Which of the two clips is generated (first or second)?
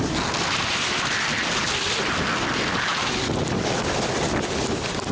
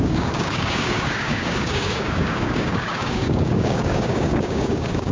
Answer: second